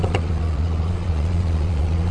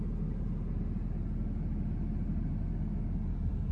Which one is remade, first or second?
first